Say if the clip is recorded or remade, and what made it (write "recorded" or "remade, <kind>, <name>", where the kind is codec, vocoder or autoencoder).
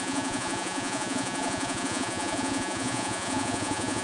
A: remade, vocoder, Vocos